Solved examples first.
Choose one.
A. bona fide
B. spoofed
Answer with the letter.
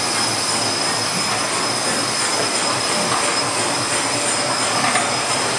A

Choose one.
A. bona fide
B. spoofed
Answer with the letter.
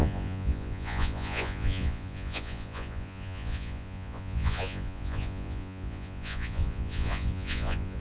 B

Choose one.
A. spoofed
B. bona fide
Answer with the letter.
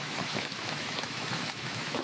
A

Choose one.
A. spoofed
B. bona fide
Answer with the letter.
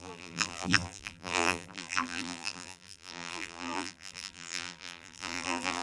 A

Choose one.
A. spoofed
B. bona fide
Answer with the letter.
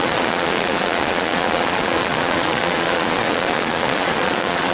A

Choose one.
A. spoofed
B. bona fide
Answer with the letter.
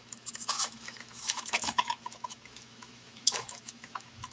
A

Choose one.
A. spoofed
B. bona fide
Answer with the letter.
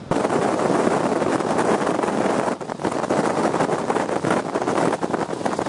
B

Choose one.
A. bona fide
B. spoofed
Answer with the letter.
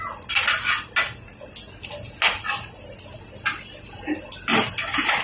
A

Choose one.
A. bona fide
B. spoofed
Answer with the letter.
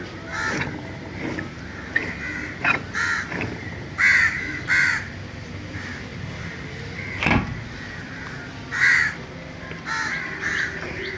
A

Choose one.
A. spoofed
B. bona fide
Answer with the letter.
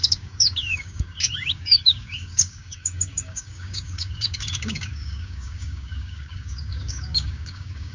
A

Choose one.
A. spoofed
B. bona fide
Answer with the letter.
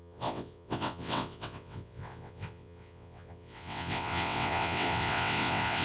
A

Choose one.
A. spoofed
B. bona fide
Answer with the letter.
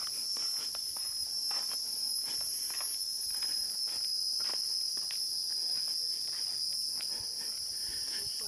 B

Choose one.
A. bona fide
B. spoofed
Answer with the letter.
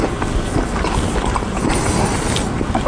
A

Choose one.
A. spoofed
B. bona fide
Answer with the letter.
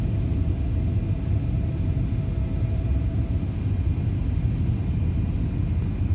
B